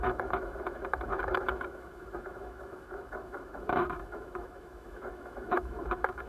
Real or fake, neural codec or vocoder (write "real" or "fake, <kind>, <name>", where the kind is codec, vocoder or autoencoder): fake, autoencoder, DAC-VAE